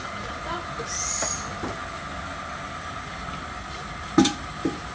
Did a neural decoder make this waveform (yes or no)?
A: no